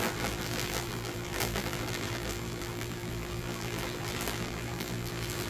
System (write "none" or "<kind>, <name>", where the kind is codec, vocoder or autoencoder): vocoder, BigVGAN v2